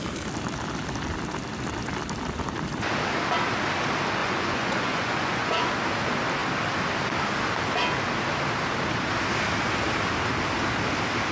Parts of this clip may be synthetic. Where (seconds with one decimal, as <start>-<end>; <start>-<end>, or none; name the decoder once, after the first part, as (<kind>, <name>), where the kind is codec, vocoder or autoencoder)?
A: 4.2-5.7 (vocoder, Vocos)